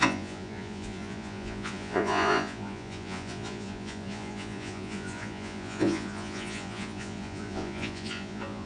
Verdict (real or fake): fake